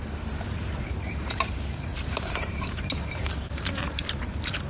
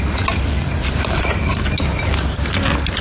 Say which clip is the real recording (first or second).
second